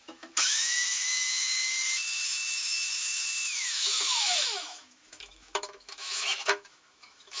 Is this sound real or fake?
fake